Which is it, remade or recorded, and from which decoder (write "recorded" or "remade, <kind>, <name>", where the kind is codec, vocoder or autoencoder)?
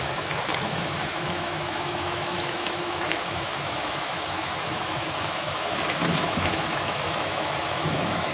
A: remade, autoencoder, DAC-VAE